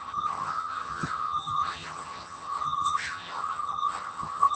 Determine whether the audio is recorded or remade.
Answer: remade